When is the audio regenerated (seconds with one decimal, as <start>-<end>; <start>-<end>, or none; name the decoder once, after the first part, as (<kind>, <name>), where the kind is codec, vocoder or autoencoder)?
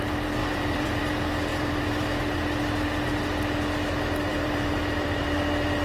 0.4-1.0 (vocoder, BigVGAN v2); 1.5-2.2; 4.3-5.2